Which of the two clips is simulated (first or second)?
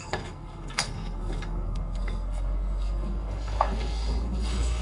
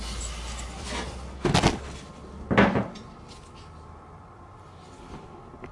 first